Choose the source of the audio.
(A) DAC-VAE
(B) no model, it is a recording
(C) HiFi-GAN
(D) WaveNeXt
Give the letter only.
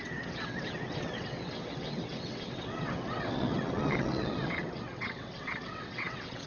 D